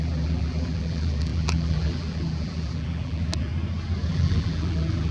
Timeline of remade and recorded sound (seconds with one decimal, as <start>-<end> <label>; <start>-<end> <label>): 0.0-3.5 remade; 3.5-4.1 recorded; 4.1-5.1 remade